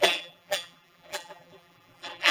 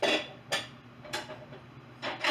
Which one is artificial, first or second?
first